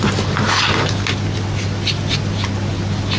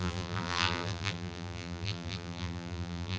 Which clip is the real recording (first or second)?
first